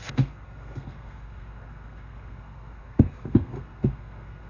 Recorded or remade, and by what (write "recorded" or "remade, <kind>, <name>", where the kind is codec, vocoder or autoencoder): remade, codec, SNAC